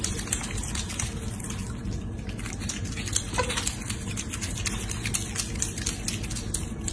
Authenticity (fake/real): real